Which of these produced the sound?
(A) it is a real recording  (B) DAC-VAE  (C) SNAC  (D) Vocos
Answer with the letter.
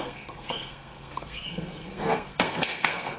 C